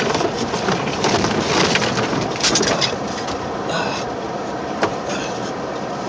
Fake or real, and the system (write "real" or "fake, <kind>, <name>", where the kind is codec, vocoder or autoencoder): fake, vocoder, BigVGAN v2